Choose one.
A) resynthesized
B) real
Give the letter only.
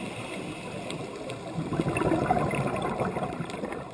B